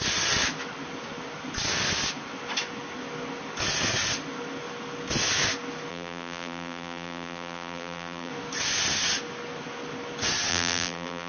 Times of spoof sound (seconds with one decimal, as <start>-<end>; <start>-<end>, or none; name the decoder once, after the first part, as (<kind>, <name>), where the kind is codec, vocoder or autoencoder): 5.9-8.3 (vocoder, BigVGAN v2); 10.5-11.3